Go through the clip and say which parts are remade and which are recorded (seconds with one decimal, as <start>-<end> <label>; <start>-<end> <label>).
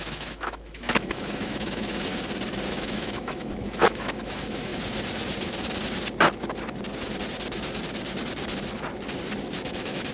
0.0-2.1 remade; 2.1-2.7 recorded; 2.7-4.7 remade; 4.7-9.7 recorded; 9.7-10.1 remade